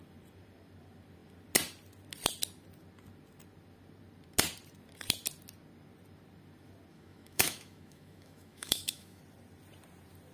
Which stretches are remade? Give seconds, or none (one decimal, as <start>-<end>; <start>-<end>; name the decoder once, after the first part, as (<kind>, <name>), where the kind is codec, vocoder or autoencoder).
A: 6.9-9.2 (autoencoder, DAC-VAE)